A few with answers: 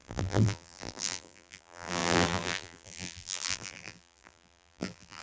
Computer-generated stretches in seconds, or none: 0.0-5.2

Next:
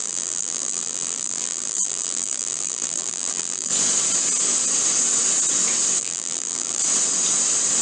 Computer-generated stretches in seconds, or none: 0.0-3.7; 6.0-6.8

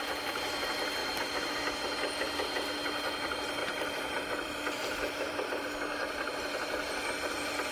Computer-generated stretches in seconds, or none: 1.0-1.5; 3.6-5.5

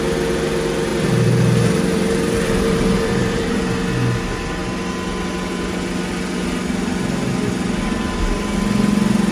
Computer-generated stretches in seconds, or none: 0.9-3.6

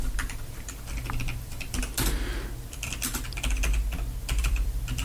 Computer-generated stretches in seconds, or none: 0.0-1.8; 4.4-5.0

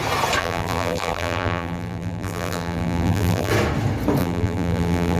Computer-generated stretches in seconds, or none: 0.4-3.5; 4.2-5.2

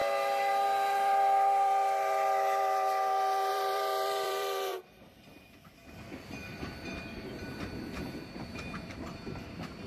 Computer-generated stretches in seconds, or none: 3.5-9.9